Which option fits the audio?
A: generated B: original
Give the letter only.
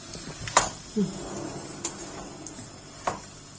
B